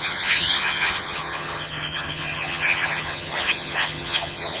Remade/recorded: remade